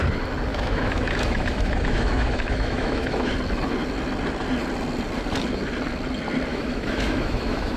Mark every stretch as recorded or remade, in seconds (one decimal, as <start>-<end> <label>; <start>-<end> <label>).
0.0-0.5 recorded; 0.5-3.3 remade; 3.3-6.5 recorded; 6.5-7.8 remade